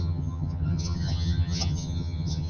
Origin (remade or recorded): remade